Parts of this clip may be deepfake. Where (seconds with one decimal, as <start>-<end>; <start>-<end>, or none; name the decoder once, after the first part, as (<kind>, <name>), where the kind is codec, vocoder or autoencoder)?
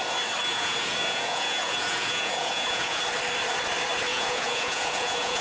0.5-3.0 (vocoder, Vocos); 4.1-5.4